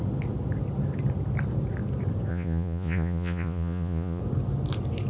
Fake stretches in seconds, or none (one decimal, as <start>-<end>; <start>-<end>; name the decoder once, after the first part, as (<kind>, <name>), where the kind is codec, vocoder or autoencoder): 2.3-4.2 (vocoder, Vocos)